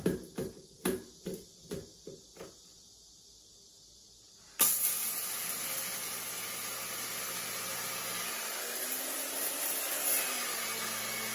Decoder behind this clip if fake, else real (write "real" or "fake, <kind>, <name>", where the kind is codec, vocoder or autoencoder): real